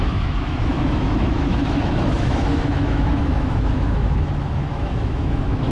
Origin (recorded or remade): remade